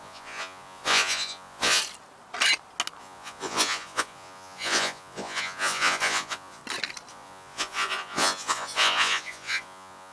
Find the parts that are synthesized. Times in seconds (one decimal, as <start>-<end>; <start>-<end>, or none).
0.0-1.8; 3.0-6.6; 7.1-10.1